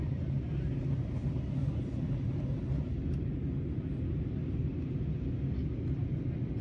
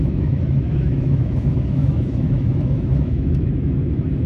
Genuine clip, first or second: first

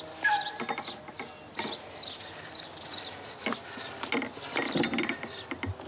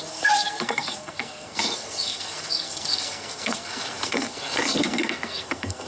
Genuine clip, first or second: first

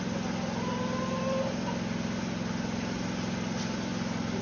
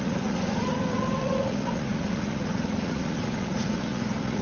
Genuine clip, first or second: first